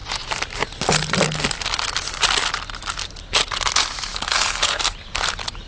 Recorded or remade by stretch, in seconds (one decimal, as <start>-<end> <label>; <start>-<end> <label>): 0.0-4.1 recorded; 4.1-4.8 remade; 4.8-5.7 recorded

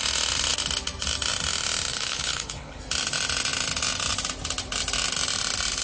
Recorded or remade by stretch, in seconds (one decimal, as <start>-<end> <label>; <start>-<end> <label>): 0.0-1.9 recorded; 1.9-2.8 remade; 2.8-5.8 recorded

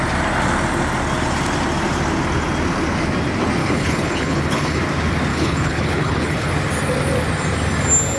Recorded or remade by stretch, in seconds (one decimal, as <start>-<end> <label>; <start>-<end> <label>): 0.0-3.6 recorded; 3.6-4.8 remade; 4.8-5.3 recorded; 5.3-6.5 remade; 6.5-8.2 recorded

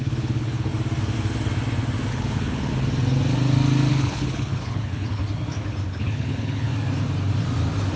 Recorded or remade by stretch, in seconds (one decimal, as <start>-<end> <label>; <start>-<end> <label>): 0.0-0.7 remade; 0.7-2.1 recorded; 2.1-2.7 remade; 2.7-3.9 recorded; 3.9-5.2 remade; 5.2-5.9 recorded; 5.9-6.7 remade; 6.7-8.0 recorded

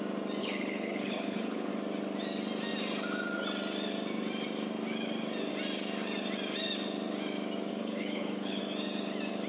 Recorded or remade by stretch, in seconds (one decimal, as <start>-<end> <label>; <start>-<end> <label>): 0.0-0.4 recorded; 0.4-1.7 remade; 1.7-7.7 recorded; 7.7-8.6 remade; 8.6-9.5 recorded

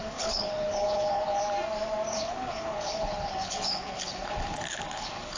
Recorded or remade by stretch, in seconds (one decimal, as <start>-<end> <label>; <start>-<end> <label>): 0.0-1.4 remade; 1.4-2.1 recorded; 2.1-5.4 remade